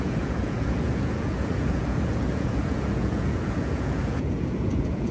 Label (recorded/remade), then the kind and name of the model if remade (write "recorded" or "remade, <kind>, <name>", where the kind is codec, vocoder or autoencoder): remade, vocoder, Vocos